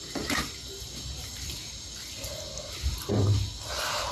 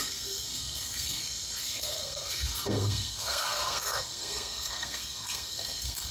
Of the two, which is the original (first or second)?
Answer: first